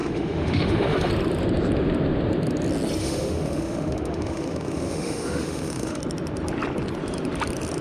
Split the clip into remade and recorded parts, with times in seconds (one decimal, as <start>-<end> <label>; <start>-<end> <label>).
0.0-1.1 remade; 1.1-3.0 recorded; 3.0-6.0 remade; 6.0-7.8 recorded